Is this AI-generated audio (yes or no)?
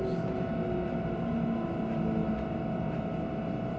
no